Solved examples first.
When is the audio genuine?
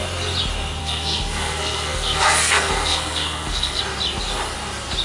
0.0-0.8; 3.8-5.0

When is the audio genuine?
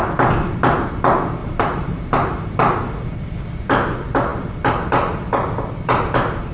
0.0-1.4; 3.1-6.5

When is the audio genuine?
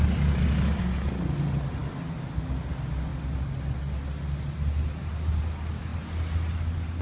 0.0-7.0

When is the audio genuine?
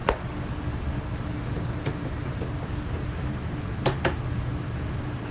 0.0-1.3; 2.4-5.3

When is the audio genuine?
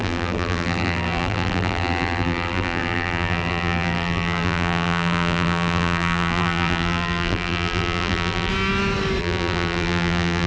8.5-9.2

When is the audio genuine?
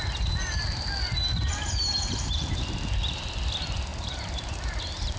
0.0-1.2; 3.5-3.9; 4.8-5.2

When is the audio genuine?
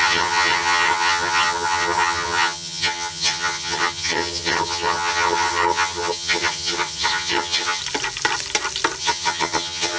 7.8-9.0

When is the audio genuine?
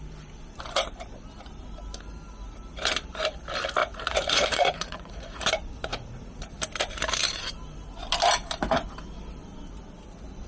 0.0-3.8; 5.5-5.9; 6.5-10.5